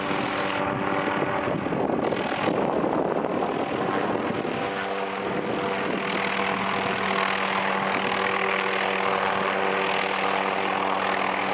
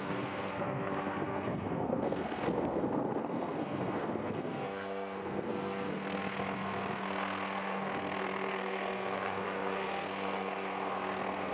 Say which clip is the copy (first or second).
second